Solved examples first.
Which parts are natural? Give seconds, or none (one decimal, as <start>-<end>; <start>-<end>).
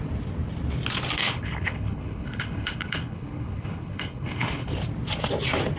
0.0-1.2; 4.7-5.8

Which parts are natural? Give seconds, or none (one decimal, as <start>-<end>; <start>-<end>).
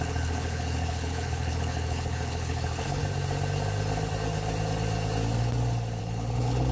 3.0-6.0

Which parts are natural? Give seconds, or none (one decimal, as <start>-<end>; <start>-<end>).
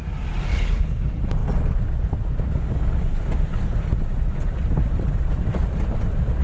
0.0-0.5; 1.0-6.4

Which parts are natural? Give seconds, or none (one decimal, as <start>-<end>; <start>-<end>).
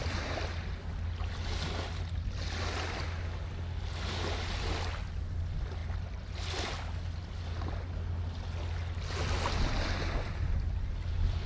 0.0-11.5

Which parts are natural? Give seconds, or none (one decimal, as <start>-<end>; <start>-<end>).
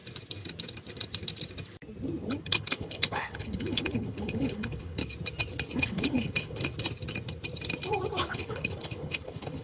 0.0-2.4; 5.0-5.8; 6.7-8.2